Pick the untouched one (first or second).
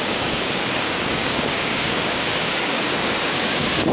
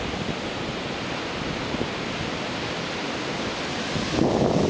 second